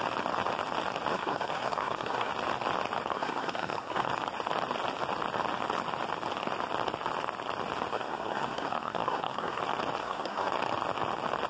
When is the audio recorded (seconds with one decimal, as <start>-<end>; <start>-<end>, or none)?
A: 0.0-1.1; 2.3-3.1; 4.1-7.9; 9.6-10.0; 10.5-11.5